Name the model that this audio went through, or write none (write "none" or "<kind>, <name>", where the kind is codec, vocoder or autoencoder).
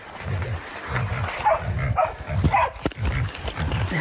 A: vocoder, BigVGAN v2